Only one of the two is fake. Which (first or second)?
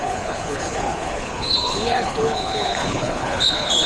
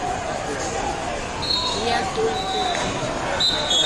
first